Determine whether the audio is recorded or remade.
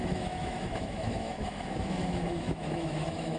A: remade